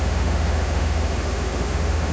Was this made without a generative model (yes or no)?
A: no